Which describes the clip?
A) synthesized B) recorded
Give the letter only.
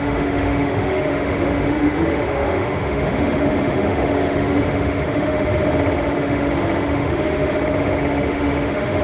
A